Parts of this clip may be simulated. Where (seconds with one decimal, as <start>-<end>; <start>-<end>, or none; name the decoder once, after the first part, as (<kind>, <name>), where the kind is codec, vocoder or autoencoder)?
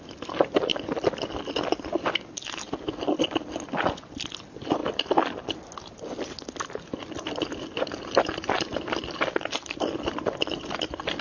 none